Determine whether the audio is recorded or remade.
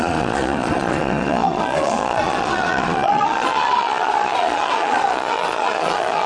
remade